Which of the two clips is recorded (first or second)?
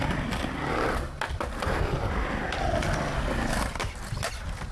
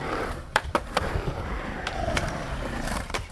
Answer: first